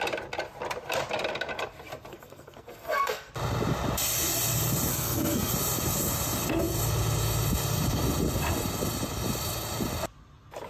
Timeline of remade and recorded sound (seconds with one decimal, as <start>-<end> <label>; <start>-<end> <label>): 0.0-2.1 recorded; 2.1-3.3 remade; 3.3-4.9 recorded; 4.9-5.5 remade; 5.5-10.7 recorded